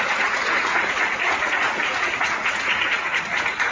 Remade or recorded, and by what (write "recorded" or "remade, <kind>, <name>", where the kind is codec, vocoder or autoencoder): remade, vocoder, Vocos